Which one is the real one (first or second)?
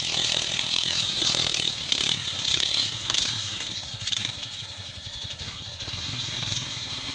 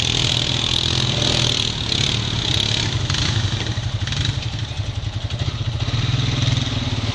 second